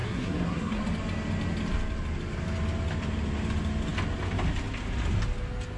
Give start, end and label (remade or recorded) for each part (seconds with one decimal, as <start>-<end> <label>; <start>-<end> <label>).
0.0-0.8 remade; 0.8-5.8 recorded

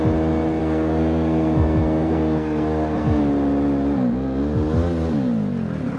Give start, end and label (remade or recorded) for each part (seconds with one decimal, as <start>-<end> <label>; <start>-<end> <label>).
0.0-0.6 recorded; 0.6-3.2 remade; 3.2-6.0 recorded

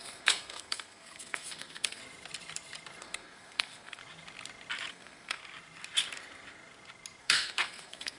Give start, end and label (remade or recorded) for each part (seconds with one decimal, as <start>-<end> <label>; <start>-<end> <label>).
0.0-2.0 remade; 2.0-3.0 recorded; 3.0-4.0 remade; 4.0-4.9 recorded; 4.9-5.4 remade; 5.4-7.2 recorded; 7.2-8.2 remade